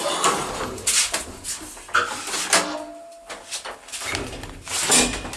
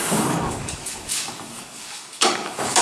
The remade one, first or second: second